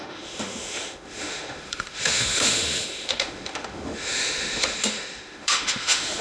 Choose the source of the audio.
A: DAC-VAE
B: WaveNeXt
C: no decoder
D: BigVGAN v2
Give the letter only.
A